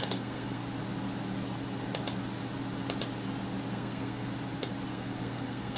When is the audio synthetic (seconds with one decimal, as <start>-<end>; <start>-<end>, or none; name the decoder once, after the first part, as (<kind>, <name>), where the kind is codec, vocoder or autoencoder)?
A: 0.0-0.6 (codec, SNAC); 3.7-4.3; 4.9-5.8